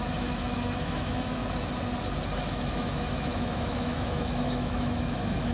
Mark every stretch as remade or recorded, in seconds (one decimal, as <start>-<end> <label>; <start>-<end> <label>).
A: 0.0-1.4 remade; 1.4-2.4 recorded; 2.4-5.5 remade